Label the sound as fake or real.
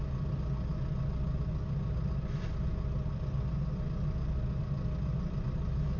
real